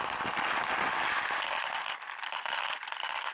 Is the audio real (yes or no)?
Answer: yes